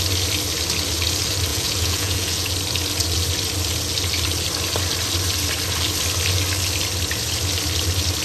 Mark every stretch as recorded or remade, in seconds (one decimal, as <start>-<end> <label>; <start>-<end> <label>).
0.0-1.5 recorded; 1.5-2.5 remade; 2.5-8.2 recorded